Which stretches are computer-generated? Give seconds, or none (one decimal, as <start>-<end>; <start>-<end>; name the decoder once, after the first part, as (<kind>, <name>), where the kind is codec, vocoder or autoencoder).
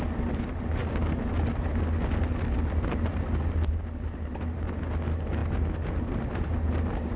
none